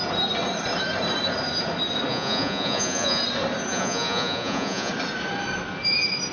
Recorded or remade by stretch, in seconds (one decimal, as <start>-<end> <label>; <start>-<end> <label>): 0.0-2.1 recorded; 2.1-3.2 remade; 3.2-3.7 recorded; 3.7-4.9 remade; 4.9-6.3 recorded